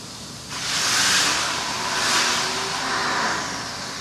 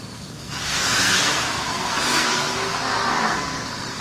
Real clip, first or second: first